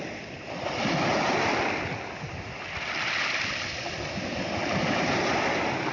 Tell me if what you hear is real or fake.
real